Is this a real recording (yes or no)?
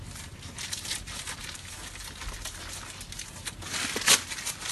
yes